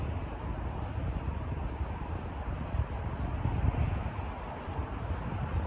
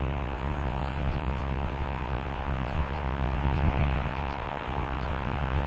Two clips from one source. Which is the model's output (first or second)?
second